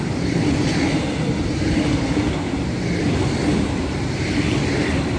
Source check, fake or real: real